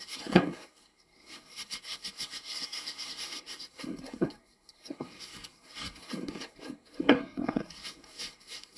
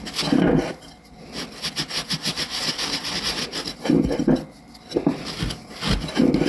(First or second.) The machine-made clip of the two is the first